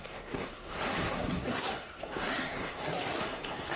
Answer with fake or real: fake